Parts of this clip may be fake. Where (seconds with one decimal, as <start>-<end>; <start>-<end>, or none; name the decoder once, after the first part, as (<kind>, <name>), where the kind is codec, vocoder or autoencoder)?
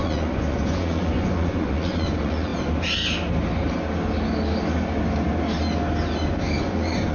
0.0-2.5 (vocoder, Vocos); 6.6-7.1